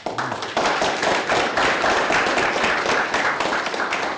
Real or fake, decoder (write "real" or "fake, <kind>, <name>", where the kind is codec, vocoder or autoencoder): real